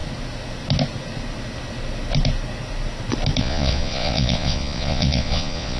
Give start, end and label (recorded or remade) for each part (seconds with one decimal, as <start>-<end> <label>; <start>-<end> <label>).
0.0-3.4 recorded; 3.4-5.8 remade